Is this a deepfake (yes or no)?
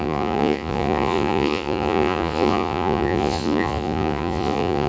yes